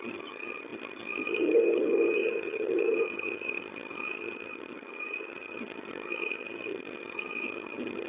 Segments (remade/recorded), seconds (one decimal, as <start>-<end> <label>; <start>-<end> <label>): 0.0-8.1 remade